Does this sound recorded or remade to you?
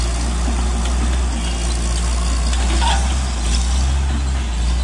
recorded